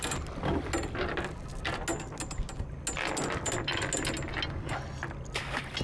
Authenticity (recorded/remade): recorded